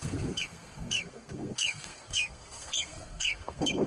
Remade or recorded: remade